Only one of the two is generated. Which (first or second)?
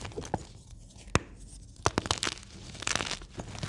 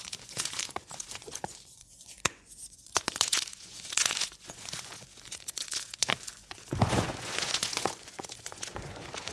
second